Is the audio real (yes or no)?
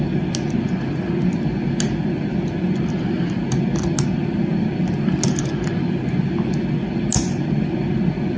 yes